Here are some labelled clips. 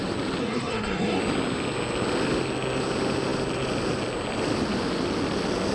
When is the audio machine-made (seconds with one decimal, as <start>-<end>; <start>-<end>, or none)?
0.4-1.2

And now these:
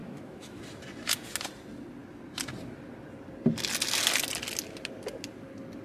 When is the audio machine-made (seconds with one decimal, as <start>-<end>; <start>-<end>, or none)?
0.0-0.6

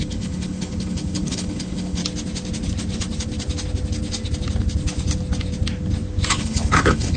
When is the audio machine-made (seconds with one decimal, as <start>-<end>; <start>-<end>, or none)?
0.0-2.0; 6.3-7.2

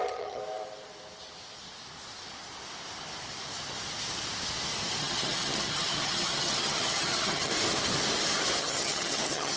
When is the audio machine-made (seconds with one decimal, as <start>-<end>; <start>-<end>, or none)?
0.0-0.4; 5.0-7.5; 8.6-9.6

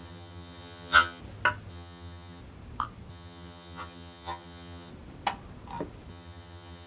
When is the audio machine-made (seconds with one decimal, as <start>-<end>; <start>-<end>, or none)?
0.0-1.2; 1.7-2.4; 3.1-4.9; 6.1-6.9

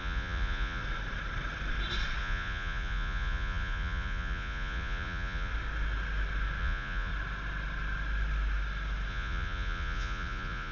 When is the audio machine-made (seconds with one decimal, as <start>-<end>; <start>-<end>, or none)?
0.0-0.8; 2.2-5.5; 6.6-7.1; 9.1-10.7

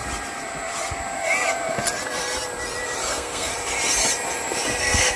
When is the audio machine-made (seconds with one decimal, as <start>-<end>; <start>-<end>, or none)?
3.1-3.5; 4.8-5.2